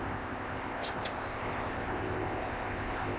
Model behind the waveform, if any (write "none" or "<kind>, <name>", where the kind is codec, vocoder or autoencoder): codec, ZipCodec